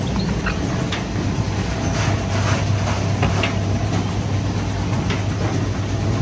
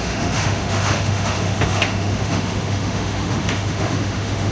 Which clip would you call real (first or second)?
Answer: first